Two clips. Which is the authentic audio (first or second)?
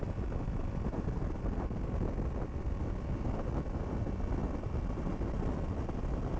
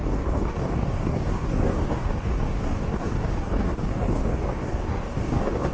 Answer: first